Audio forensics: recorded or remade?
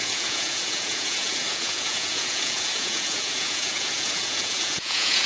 remade